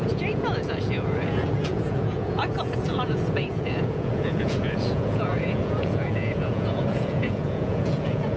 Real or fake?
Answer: fake